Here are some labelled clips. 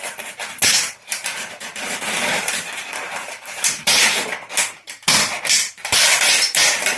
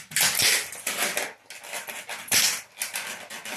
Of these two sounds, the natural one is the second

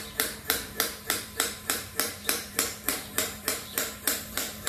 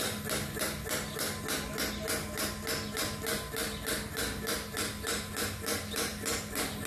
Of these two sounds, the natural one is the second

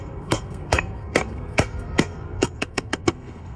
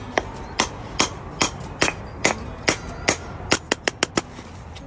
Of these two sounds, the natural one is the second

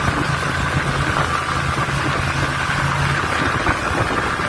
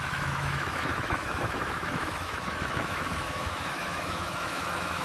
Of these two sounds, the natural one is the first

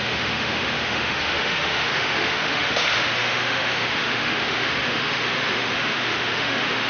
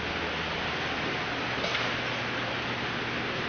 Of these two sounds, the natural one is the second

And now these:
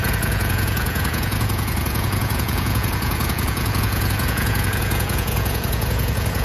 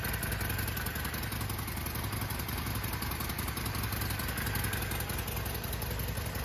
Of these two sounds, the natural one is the second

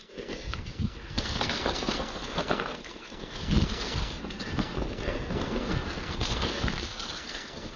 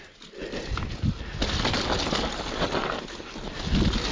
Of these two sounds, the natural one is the second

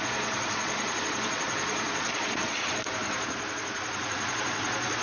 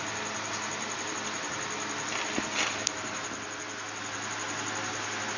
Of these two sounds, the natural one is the second